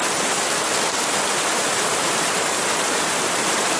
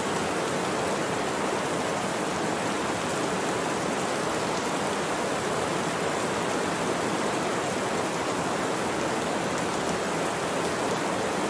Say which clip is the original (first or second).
second